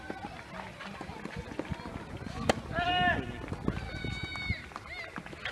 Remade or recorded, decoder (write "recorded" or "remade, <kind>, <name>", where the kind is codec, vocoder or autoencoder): recorded